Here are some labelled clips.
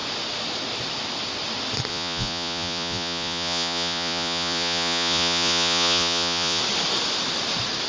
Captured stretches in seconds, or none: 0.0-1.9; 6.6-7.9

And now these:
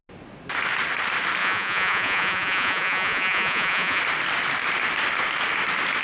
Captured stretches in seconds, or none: 0.0-1.4; 4.0-6.0

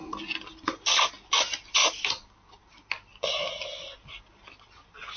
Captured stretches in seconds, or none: 0.0-5.2